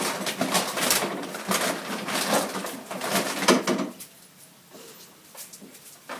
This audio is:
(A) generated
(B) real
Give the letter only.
B